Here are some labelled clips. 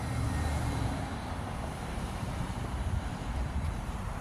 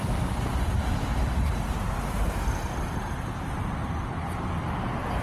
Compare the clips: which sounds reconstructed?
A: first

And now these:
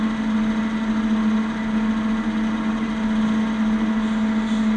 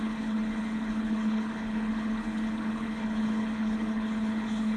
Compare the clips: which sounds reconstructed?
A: second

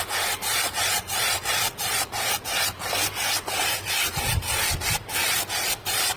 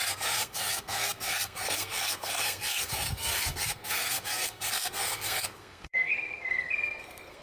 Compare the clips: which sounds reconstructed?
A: second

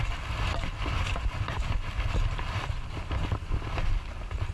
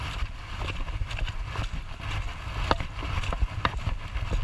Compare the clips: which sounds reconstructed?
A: first